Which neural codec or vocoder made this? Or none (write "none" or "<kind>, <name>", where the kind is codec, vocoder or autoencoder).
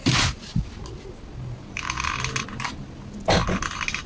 none